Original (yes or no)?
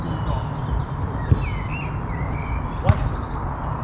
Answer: yes